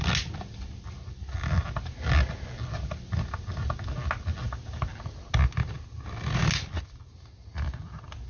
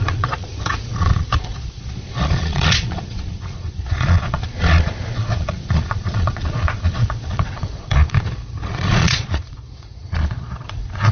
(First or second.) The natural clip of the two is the first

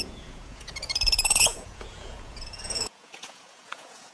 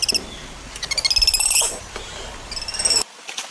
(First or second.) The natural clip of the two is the second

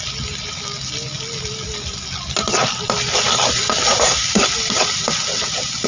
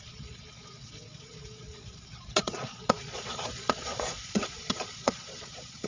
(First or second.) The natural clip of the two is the first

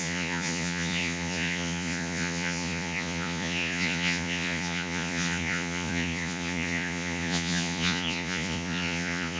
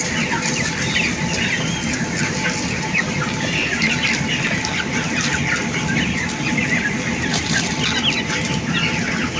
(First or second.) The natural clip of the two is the second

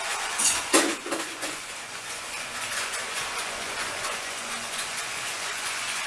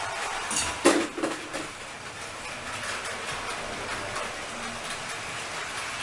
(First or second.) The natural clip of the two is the second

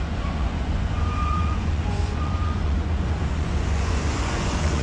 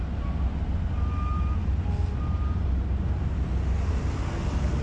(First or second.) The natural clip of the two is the second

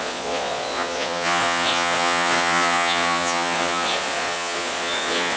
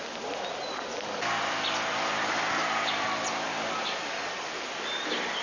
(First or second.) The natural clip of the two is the second